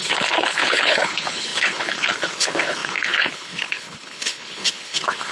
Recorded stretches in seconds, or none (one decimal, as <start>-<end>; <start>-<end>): none